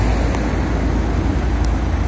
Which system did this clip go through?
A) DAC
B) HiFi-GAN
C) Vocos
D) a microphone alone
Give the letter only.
D